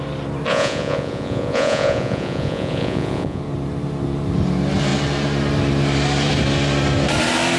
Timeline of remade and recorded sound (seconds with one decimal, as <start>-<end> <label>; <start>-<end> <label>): 0.0-0.5 recorded; 0.5-3.4 remade; 3.4-7.6 recorded